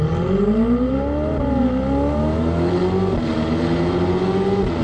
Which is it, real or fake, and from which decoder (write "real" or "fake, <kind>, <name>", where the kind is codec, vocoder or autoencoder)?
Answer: real